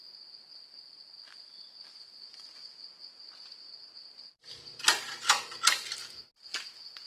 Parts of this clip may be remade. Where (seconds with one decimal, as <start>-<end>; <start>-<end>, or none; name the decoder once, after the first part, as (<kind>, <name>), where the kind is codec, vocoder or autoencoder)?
0.5-2.8 (vocoder, BigVGAN v2); 4.0-4.5